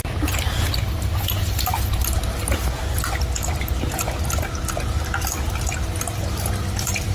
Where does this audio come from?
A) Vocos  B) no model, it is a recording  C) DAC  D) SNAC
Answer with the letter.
B